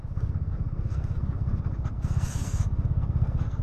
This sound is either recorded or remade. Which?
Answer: remade